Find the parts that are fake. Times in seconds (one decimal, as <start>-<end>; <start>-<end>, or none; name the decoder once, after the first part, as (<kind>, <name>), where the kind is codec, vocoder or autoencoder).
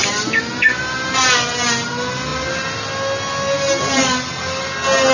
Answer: none